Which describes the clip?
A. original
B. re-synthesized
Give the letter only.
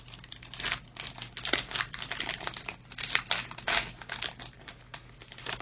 A